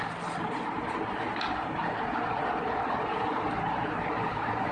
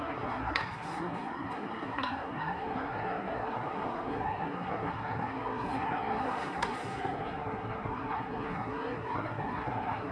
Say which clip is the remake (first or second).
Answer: second